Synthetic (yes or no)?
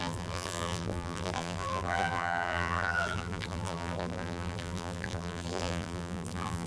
yes